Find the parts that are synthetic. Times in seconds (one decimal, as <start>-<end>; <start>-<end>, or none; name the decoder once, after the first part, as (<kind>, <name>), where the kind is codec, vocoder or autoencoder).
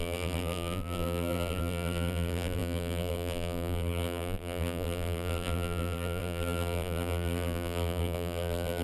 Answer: 0.0-8.8 (vocoder, BigVGAN v2)